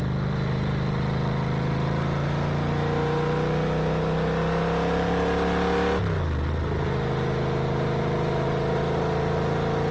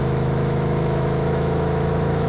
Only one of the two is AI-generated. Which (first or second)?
second